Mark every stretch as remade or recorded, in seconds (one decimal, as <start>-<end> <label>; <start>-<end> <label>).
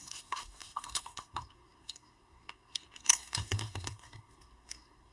0.0-5.1 remade